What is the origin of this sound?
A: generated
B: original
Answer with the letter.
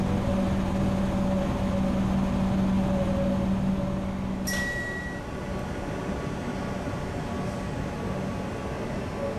B